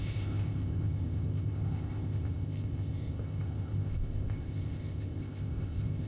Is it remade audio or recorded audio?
remade